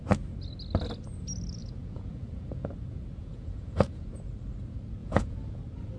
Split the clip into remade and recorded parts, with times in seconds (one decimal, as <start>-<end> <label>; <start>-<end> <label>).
0.0-1.6 recorded; 1.6-2.7 remade; 2.7-3.2 recorded; 3.2-4.1 remade; 4.1-5.0 recorded; 5.0-5.6 remade; 5.6-6.0 recorded